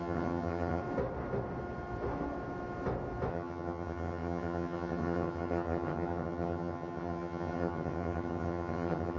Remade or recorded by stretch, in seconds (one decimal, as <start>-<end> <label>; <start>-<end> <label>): 0.0-0.8 remade; 0.8-3.3 recorded; 3.3-9.2 remade